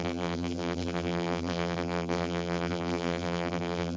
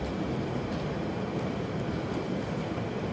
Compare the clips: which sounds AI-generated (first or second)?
first